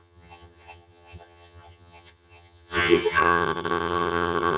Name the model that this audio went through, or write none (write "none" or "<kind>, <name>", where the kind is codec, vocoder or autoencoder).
vocoder, HiFi-GAN